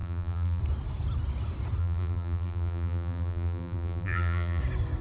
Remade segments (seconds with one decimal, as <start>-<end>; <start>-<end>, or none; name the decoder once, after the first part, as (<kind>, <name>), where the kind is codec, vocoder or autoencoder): 0.0-0.6 (vocoder, BigVGAN v2); 1.8-4.6